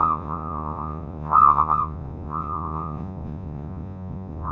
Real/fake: fake